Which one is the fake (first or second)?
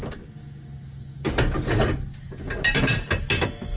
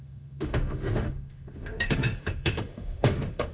second